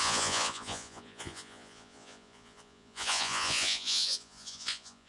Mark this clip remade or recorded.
remade